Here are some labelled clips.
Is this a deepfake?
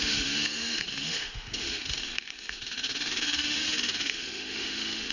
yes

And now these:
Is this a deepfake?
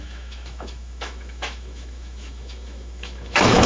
yes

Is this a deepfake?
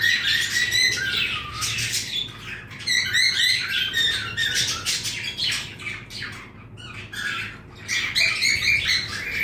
no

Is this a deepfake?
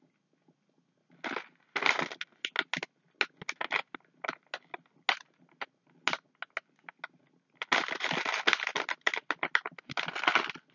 no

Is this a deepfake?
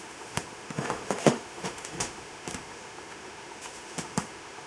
yes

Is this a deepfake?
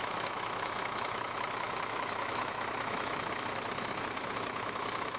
yes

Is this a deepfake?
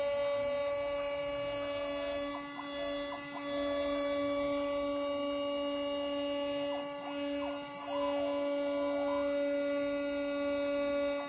no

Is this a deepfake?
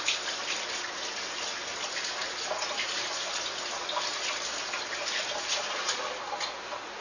no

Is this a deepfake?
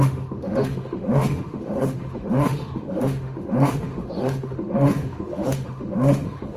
yes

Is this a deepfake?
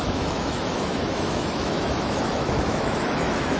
yes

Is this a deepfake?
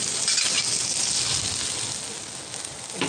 no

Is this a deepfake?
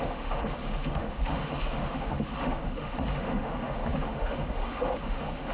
yes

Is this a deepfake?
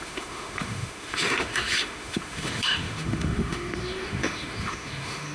yes